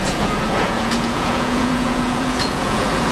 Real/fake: fake